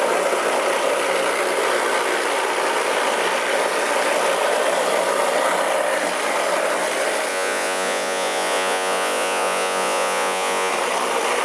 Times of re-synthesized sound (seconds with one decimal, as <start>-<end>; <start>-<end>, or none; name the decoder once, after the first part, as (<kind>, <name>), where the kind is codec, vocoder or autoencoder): 7.3-10.7 (vocoder, Vocos)